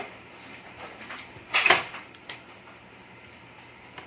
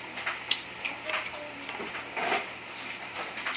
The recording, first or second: second